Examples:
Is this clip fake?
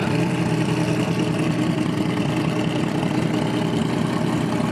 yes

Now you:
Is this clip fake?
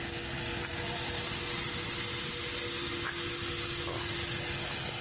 no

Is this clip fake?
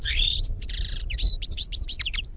yes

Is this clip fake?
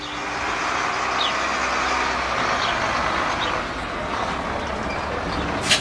no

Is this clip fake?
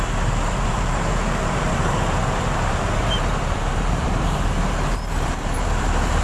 yes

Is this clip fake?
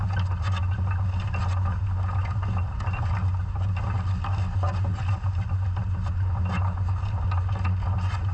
no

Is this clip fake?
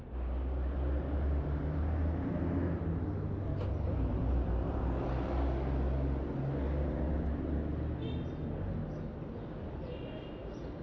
no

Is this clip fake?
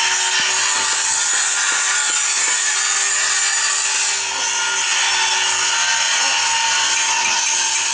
no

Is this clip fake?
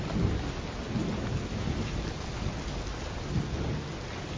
no